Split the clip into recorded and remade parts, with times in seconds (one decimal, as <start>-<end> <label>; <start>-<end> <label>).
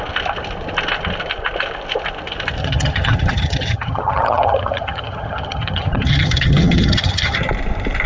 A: 0.0-2.6 recorded; 2.6-7.5 remade; 7.5-8.1 recorded